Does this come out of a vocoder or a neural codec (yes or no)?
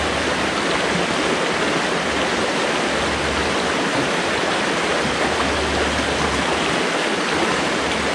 no